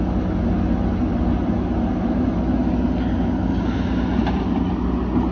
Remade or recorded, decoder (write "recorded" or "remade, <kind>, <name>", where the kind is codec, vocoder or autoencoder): recorded